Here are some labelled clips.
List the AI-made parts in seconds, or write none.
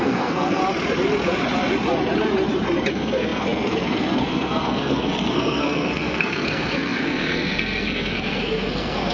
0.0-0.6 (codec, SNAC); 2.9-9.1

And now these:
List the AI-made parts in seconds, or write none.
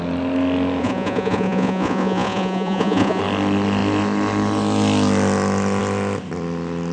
0.8-3.2 (vocoder, Vocos)